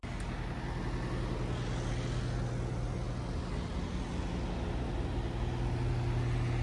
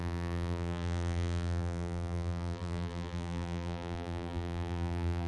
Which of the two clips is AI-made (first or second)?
second